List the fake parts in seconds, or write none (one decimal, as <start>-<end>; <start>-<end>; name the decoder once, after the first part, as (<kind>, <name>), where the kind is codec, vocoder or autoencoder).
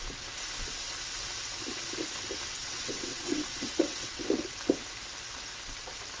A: 2.5-4.2 (vocoder, WaveNeXt)